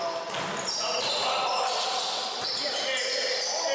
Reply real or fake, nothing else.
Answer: real